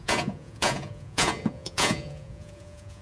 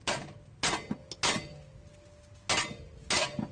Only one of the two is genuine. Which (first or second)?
second